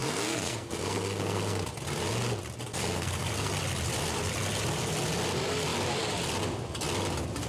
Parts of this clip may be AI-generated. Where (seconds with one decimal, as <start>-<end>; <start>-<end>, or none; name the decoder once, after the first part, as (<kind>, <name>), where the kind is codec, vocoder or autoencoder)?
0.0-1.7 (codec, SNAC); 2.7-3.5